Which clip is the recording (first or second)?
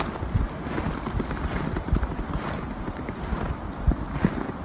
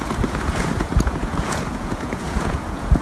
first